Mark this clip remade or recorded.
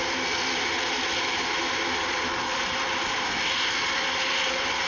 recorded